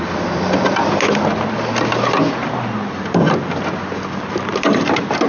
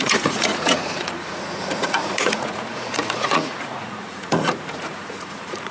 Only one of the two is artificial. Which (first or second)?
second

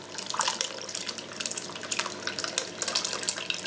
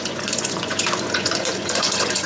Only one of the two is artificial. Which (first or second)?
second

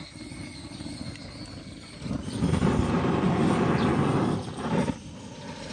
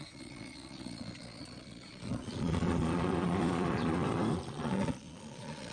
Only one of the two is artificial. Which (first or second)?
second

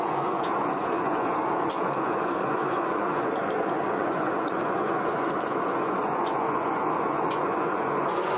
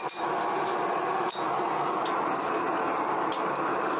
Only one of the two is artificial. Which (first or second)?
first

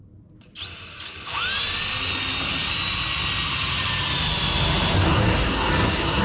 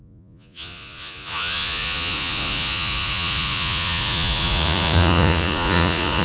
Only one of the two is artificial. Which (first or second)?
second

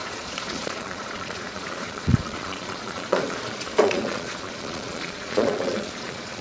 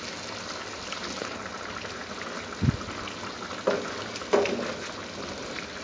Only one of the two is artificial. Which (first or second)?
first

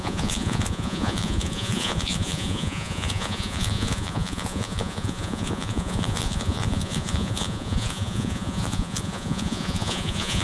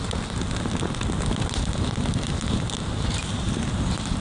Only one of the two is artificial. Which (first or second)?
first